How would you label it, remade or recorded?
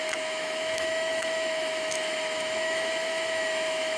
remade